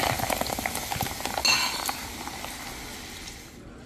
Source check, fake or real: real